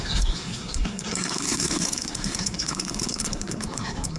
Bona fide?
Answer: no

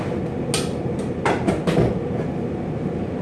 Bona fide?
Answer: yes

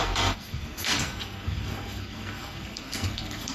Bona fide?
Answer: no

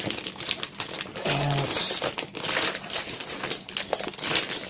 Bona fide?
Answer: yes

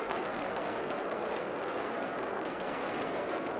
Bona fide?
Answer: no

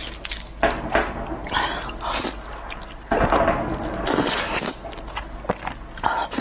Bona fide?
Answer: yes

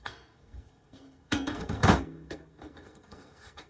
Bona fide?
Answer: no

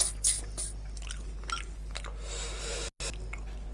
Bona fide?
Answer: yes